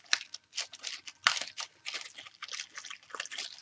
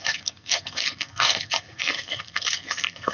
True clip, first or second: first